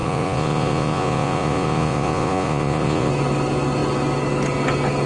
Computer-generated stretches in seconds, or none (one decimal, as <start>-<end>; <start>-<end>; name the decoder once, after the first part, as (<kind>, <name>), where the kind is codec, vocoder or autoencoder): 0.0-3.1 (vocoder, Vocos)